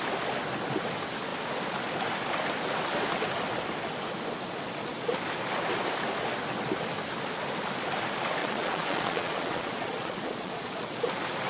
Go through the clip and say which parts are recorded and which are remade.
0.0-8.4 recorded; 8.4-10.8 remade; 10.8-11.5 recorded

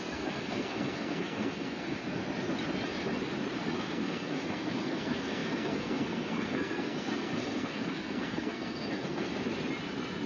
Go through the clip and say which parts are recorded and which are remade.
0.0-2.2 remade; 2.2-3.7 recorded; 3.7-9.3 remade; 9.3-10.3 recorded

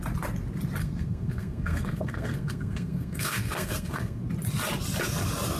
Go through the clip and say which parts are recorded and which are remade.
0.0-0.8 recorded; 0.8-4.2 remade; 4.2-5.6 recorded

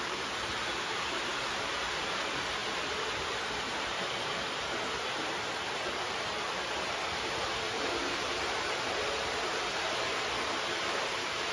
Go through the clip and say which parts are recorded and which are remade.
0.0-9.5 remade; 9.5-10.7 recorded; 10.7-11.5 remade

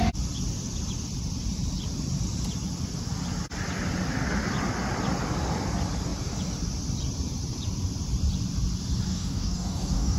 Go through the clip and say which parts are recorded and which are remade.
0.0-9.1 recorded; 9.1-10.2 remade